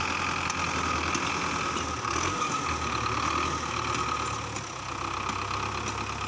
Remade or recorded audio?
recorded